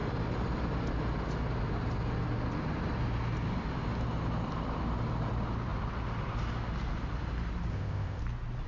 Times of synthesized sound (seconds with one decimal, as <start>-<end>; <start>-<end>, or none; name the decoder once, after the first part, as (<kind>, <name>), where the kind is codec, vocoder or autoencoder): 7.7-8.2 (codec, ZipCodec)